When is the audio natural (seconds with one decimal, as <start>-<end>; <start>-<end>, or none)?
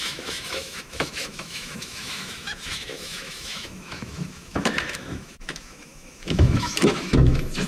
none